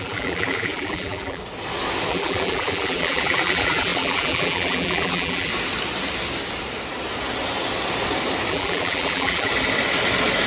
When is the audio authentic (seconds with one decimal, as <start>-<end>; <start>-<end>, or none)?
1.4-2.1; 5.5-8.5; 9.5-10.5